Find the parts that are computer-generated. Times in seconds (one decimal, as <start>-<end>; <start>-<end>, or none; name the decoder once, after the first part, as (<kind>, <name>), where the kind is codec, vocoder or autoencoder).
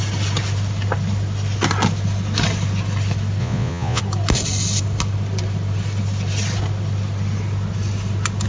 3.4-4.0 (vocoder, Vocos)